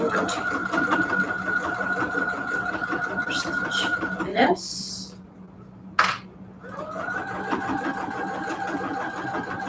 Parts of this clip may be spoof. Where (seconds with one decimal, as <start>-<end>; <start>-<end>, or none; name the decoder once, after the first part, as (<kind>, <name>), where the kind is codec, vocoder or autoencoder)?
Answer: 4.3-4.9 (codec, HILCodec)